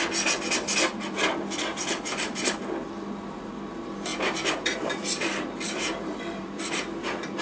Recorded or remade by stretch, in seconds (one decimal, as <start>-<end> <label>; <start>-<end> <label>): 0.0-1.7 recorded; 1.7-2.6 remade; 2.6-4.1 recorded; 4.1-6.7 remade; 6.7-7.4 recorded